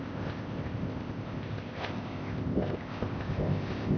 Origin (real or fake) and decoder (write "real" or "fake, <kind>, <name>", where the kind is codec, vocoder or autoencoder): fake, codec, ZipCodec